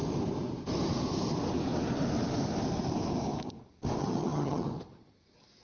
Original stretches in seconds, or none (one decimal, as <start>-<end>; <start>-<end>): 0.0-4.0; 4.7-5.6